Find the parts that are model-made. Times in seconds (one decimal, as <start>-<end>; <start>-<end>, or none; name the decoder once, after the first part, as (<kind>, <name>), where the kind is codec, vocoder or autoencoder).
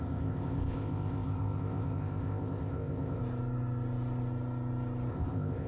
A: 0.0-3.2 (codec, ZipCodec); 5.1-5.7